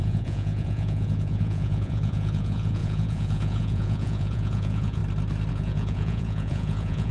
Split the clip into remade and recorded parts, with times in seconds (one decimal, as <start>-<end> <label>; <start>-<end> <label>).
0.0-5.0 remade; 5.0-5.5 recorded; 5.5-7.1 remade